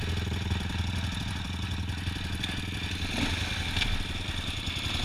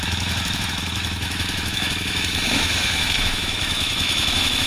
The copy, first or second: second